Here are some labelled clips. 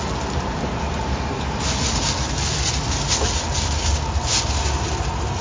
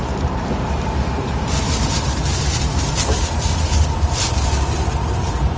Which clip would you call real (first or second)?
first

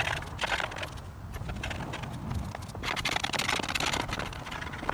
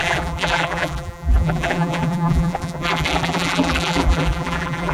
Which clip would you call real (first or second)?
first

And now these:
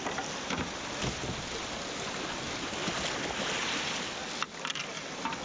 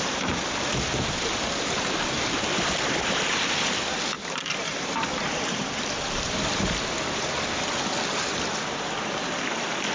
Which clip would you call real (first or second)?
first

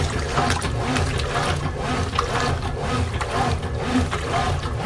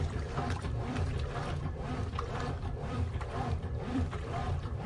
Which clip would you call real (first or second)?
first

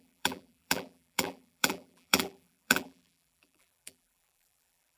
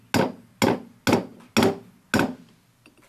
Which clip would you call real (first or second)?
second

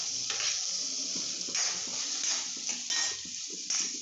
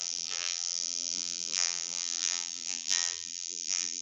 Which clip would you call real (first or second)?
first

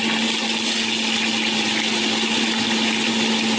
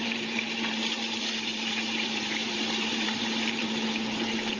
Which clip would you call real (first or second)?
first